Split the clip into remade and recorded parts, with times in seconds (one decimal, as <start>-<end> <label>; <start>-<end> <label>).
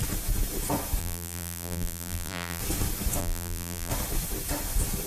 0.0-1.0 recorded; 1.0-2.6 remade; 2.6-3.2 recorded; 3.2-3.9 remade; 3.9-5.1 recorded